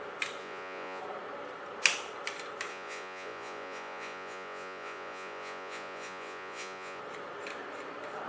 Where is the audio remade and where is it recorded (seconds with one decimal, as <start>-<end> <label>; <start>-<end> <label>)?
0.0-0.4 recorded; 0.4-1.0 remade; 1.0-2.7 recorded; 2.7-7.0 remade; 7.0-8.3 recorded